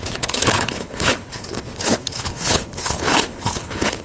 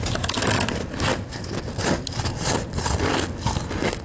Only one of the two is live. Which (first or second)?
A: second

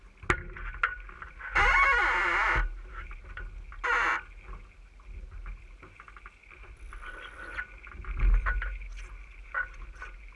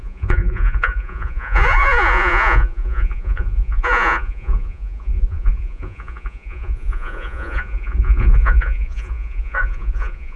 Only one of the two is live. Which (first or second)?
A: first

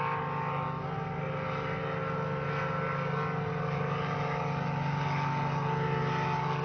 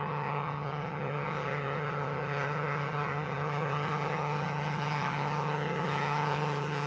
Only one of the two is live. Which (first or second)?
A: first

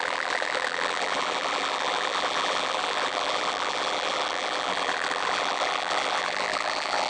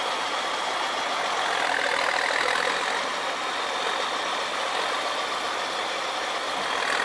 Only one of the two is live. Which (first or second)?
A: second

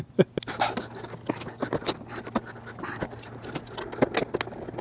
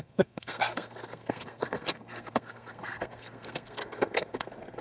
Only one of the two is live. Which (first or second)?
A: first